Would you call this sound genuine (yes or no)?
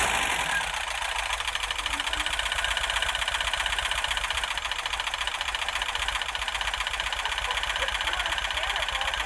yes